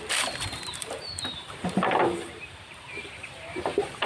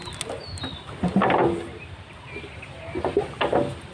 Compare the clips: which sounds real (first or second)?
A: second